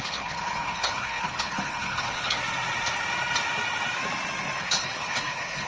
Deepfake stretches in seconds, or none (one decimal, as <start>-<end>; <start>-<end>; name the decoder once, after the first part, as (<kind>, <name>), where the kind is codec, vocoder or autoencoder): 0.0-2.4 (codec, HILCodec); 4.6-5.7